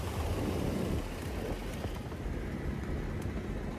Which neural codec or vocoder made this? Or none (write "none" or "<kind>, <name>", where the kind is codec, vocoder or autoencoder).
none